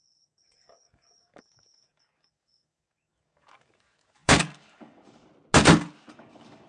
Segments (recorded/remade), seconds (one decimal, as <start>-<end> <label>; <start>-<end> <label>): 0.0-5.3 remade; 5.3-6.1 recorded; 6.1-6.7 remade